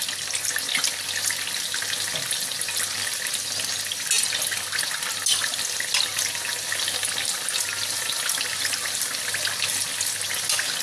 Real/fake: real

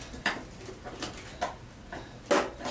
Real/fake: real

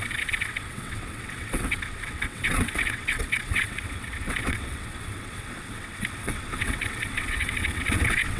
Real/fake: fake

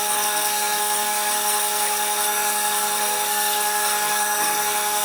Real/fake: fake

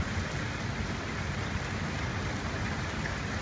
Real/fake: real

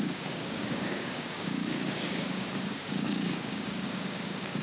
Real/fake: fake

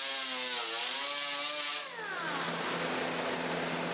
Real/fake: real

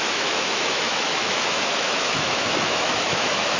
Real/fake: fake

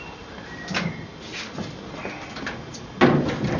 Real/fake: real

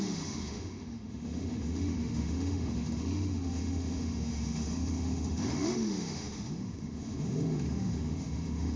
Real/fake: fake